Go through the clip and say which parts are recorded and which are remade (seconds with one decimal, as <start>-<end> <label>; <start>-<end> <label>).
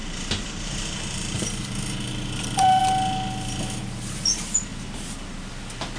0.0-2.8 remade; 2.8-6.0 recorded